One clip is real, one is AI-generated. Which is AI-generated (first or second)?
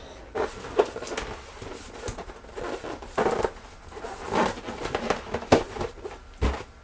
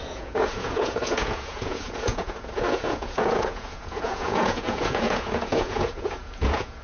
second